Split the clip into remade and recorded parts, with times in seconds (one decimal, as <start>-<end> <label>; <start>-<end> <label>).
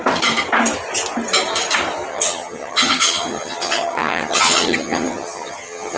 0.0-2.1 recorded; 2.1-6.0 remade